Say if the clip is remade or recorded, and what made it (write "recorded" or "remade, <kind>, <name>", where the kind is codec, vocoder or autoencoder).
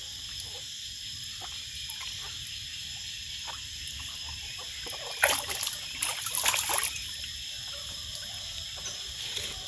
recorded